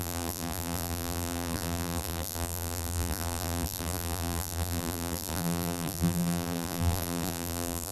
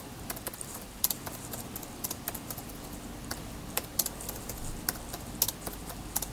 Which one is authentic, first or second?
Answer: second